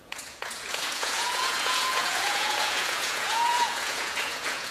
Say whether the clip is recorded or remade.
remade